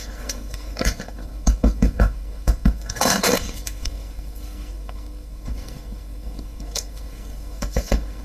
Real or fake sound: fake